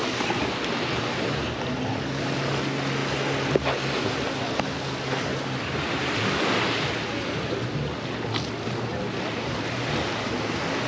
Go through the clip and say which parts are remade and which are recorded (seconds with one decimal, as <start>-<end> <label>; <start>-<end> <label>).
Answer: 0.0-10.9 recorded